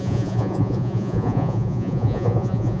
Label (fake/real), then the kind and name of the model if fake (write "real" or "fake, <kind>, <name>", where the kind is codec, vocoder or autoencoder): fake, vocoder, Vocos